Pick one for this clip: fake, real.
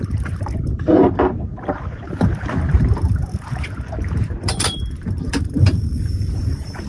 fake